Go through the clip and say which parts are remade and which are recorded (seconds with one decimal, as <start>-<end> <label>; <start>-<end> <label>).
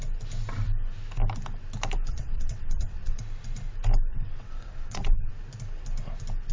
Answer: 0.0-2.1 recorded; 2.1-3.2 remade; 3.2-4.1 recorded; 4.1-5.3 remade; 5.3-6.5 recorded